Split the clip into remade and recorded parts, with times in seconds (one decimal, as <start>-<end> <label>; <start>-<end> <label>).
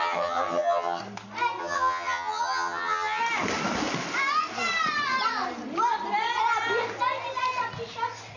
0.0-1.0 remade; 1.0-1.6 recorded; 1.6-3.2 remade; 3.2-8.4 recorded